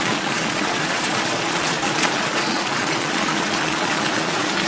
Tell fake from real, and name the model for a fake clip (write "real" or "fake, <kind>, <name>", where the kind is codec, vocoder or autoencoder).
fake, vocoder, Vocos